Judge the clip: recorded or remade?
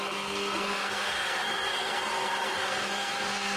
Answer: remade